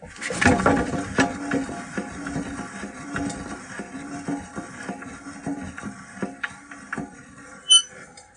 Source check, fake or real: real